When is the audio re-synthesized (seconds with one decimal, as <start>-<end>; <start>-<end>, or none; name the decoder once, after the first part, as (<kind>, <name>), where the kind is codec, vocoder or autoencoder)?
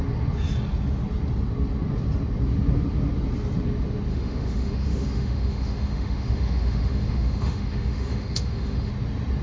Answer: 4.1-8.9 (autoencoder, DAC-VAE)